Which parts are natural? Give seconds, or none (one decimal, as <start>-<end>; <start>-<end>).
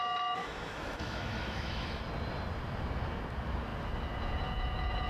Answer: 0.0-0.4; 2.0-5.1